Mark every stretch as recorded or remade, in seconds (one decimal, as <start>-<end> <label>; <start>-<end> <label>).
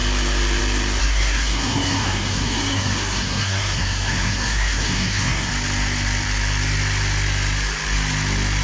0.0-1.0 recorded; 1.0-5.5 remade; 5.5-8.6 recorded